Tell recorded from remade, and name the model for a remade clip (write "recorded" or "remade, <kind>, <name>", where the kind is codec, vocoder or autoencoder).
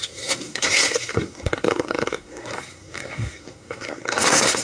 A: remade, codec, SNAC